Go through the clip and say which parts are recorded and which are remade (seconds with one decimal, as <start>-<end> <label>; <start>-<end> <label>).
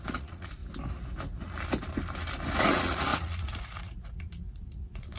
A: 0.0-0.6 remade; 0.6-2.6 recorded; 2.6-5.2 remade